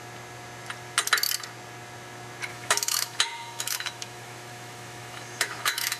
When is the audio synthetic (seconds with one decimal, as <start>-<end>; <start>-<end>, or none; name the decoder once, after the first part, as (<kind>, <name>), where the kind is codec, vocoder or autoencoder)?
2.5-6.0 (autoencoder, DAC-VAE)